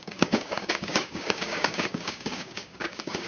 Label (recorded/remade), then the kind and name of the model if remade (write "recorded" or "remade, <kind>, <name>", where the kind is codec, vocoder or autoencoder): remade, codec, DAC